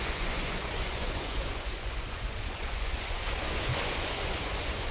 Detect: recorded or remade remade